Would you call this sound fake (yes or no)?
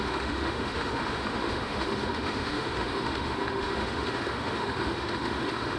yes